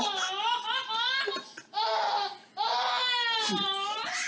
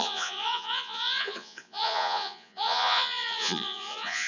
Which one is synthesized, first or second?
second